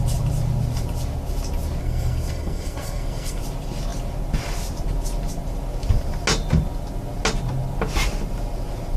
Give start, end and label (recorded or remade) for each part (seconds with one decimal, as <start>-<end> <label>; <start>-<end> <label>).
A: 0.0-1.8 recorded; 1.8-3.4 remade; 3.4-9.0 recorded